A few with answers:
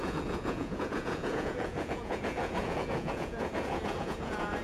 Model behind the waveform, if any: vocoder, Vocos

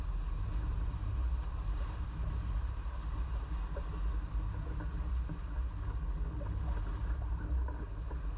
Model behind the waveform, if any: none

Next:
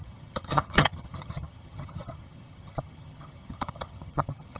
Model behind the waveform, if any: vocoder, HiFi-GAN